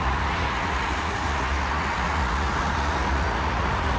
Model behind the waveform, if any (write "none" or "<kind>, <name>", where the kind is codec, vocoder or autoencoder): vocoder, Vocos